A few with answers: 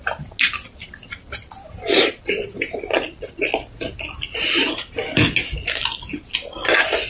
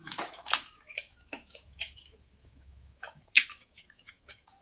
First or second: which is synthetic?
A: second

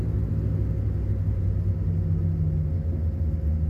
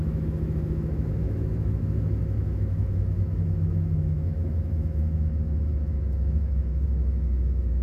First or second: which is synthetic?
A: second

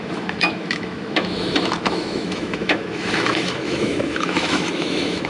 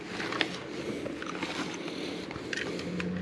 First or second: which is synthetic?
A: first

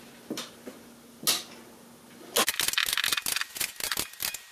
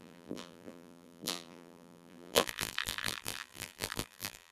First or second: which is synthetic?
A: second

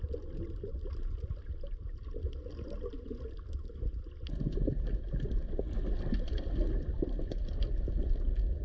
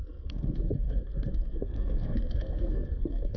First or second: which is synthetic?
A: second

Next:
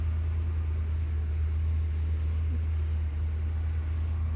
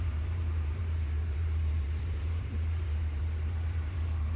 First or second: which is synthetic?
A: second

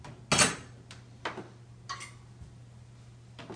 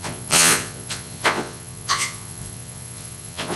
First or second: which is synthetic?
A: second